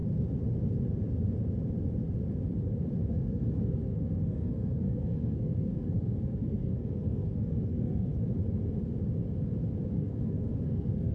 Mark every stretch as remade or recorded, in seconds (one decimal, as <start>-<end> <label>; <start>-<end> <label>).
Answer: 0.0-3.1 recorded; 3.1-8.1 remade; 8.1-9.9 recorded; 9.9-11.1 remade